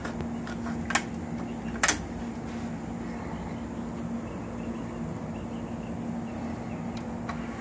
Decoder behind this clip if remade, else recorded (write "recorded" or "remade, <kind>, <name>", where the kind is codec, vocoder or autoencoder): recorded